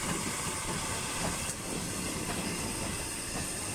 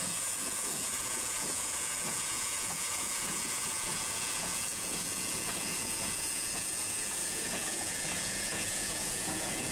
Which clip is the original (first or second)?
first